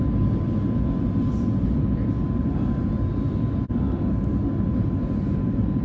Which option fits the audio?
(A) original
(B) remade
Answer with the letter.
A